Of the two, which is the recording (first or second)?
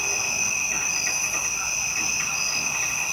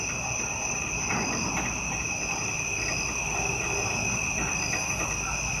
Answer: first